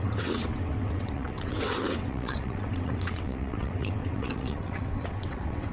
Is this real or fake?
fake